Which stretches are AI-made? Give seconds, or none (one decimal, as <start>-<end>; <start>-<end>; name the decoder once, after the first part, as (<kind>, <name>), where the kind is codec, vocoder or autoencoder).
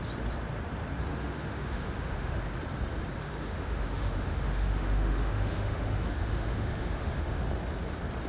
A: 1.1-2.4 (autoencoder, DAC-VAE); 3.2-7.5